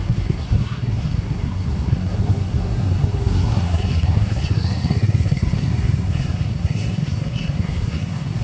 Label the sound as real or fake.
fake